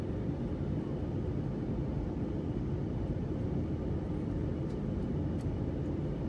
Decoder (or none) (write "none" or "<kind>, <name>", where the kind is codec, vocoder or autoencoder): none